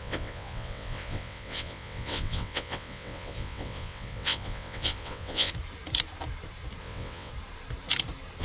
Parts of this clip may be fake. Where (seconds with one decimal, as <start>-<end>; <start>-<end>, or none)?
0.0-5.5; 6.8-7.3